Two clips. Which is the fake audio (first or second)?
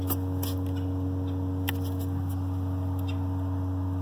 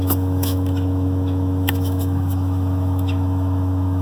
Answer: second